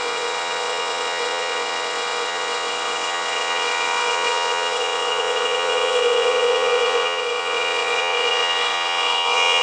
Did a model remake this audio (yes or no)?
yes